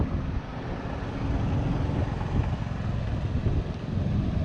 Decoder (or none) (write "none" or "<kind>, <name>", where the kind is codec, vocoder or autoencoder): none